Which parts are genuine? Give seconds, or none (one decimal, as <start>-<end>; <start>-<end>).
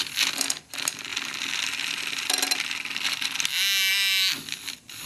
0.0-5.1